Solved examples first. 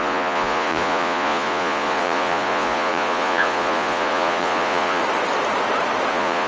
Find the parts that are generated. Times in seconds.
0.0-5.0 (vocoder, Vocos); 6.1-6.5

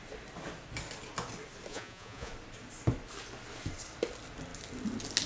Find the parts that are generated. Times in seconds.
1.7-2.3 (vocoder, Vocos)

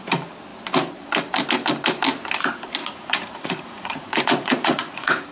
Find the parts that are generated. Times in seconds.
2.8-5.3 (vocoder, Vocos)

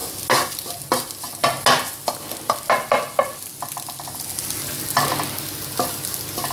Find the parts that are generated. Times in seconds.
none

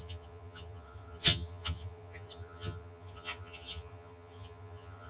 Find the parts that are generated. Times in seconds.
0.0-5.1 (vocoder, HiFi-GAN)

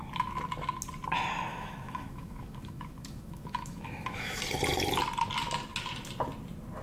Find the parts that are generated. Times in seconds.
1.5-4.4 (autoencoder, DAC-VAE)

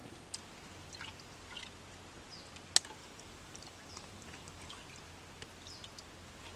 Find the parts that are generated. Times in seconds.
3.0-4.7 (vocoder, BigVGAN v2)